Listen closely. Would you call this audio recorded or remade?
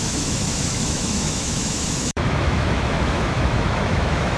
remade